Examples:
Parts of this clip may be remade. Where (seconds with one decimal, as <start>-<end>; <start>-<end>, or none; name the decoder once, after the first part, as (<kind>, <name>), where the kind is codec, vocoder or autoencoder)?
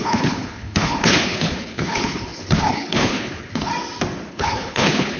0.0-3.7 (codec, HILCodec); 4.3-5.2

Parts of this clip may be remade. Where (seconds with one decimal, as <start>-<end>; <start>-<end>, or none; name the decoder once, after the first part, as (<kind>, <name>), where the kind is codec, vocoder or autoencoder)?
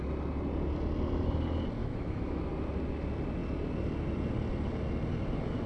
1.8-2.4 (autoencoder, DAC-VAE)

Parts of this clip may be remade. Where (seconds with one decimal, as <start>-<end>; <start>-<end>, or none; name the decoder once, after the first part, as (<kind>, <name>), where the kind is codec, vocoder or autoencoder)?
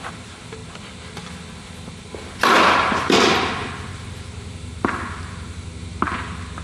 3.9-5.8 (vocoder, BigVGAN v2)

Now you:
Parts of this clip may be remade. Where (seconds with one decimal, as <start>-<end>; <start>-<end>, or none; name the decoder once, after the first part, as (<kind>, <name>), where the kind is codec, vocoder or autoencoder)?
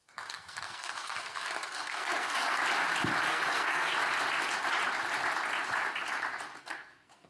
0.0-2.6 (codec, SNAC); 3.3-3.9; 6.6-7.3